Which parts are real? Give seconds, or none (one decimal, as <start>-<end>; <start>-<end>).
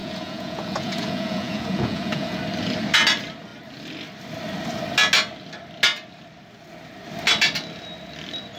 2.4-8.6